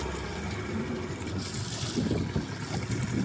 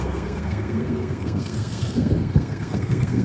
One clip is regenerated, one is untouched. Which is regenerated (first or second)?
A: second